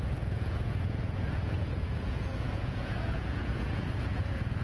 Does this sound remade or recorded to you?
remade